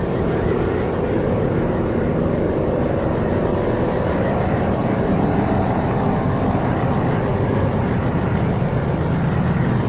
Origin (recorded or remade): recorded